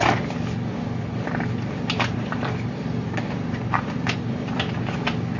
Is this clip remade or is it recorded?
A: remade